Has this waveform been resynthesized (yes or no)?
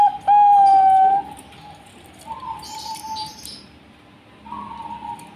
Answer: no